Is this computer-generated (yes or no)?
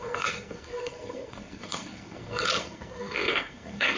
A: yes